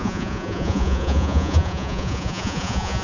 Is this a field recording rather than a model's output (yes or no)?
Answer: no